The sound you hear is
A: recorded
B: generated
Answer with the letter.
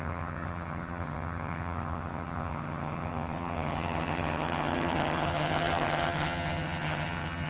B